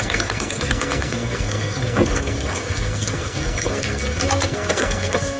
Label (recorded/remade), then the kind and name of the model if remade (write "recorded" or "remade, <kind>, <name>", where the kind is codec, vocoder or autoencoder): remade, codec, SNAC